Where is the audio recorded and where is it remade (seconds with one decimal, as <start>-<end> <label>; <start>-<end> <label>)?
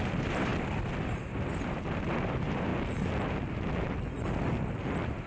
0.0-0.5 remade; 0.5-1.0 recorded; 1.0-2.7 remade; 2.7-5.3 recorded